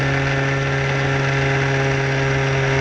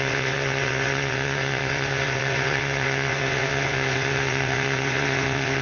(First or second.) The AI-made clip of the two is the second